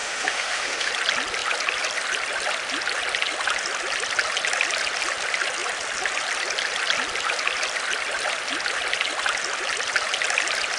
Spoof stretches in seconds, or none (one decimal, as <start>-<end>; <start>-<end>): 0.0-0.9